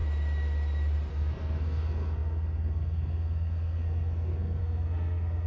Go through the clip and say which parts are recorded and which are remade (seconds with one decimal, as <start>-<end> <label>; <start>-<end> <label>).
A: 0.0-1.1 recorded; 1.1-5.5 remade